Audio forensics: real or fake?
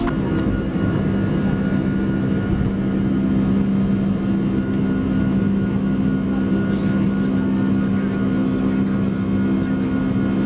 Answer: real